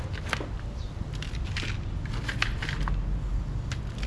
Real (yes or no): yes